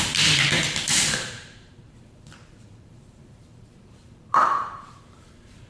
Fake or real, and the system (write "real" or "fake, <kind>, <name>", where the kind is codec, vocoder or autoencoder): fake, vocoder, BigVGAN v2